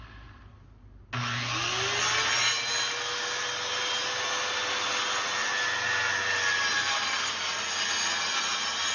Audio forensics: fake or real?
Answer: real